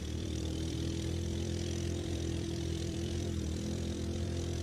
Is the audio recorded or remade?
remade